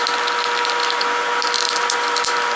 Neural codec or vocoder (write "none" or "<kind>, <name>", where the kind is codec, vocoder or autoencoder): none